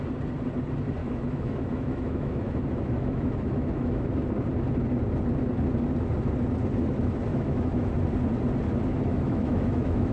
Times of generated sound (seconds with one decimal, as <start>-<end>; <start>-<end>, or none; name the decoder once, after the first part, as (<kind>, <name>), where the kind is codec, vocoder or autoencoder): 1.0-4.1 (autoencoder, DAC-VAE); 7.3-7.9; 9.1-10.1